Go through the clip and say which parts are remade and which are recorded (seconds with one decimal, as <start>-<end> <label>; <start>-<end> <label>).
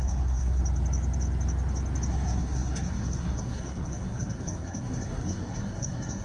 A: 0.0-0.6 remade; 0.6-2.1 recorded; 2.1-6.2 remade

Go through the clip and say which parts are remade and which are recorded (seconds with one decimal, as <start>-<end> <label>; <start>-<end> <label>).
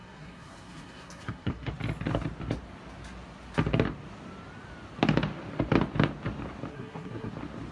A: 0.0-1.7 remade; 1.7-6.7 recorded; 6.7-7.3 remade; 7.3-7.7 recorded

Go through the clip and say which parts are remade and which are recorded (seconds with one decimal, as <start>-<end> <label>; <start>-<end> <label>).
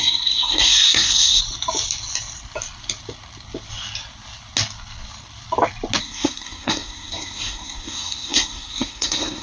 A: 0.0-1.4 remade; 1.4-6.0 recorded; 6.0-9.4 remade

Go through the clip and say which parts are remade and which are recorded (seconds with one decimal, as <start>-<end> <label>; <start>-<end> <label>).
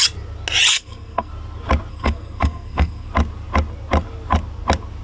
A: 0.0-0.7 recorded; 0.7-1.3 remade; 1.3-1.9 recorded; 1.9-3.1 remade; 3.1-5.0 recorded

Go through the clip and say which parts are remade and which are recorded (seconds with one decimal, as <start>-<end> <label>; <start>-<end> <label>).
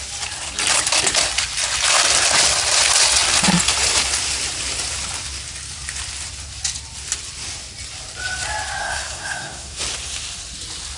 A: 0.0-8.8 recorded; 8.8-9.8 remade; 9.8-11.0 recorded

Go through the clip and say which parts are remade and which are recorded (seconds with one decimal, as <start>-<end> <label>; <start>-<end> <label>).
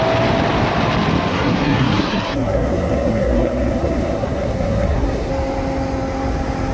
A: 0.0-1.3 recorded; 1.3-5.3 remade; 5.3-6.7 recorded